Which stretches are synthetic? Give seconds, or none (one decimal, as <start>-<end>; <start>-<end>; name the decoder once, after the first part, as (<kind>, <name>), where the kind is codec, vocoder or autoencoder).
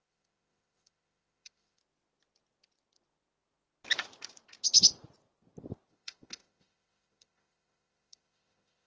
0.0-1.8 (autoencoder, DAC-VAE); 5.9-8.9